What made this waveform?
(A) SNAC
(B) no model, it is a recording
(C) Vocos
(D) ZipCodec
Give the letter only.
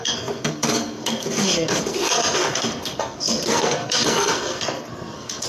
A